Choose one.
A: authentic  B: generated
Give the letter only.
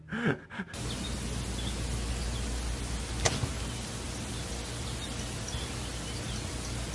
A